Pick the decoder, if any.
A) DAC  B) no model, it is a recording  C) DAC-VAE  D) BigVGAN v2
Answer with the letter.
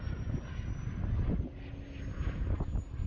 B